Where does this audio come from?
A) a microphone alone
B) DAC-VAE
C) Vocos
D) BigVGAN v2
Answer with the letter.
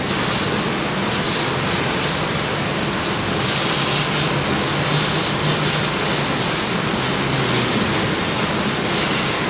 A